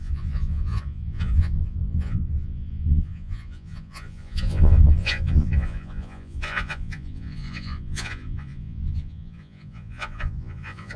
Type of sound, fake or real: fake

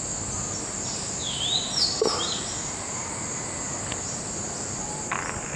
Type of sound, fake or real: real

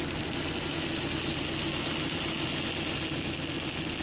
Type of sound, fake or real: real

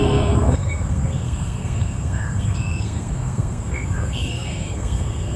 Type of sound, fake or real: fake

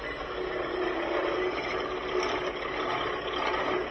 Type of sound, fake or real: real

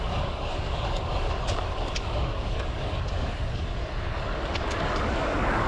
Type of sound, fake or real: fake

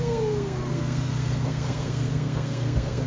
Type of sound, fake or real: fake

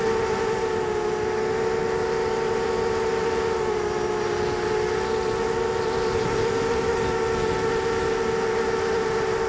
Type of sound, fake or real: real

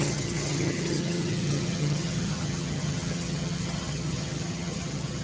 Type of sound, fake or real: fake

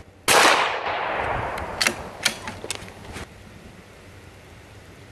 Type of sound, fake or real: real